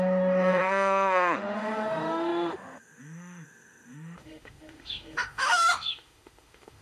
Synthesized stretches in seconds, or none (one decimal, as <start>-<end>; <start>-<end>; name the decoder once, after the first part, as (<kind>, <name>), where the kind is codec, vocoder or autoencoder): 0.0-6.8 (autoencoder, DAC-VAE)